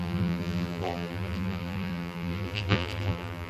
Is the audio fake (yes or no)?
yes